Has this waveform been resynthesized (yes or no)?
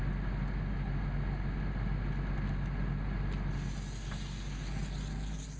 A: no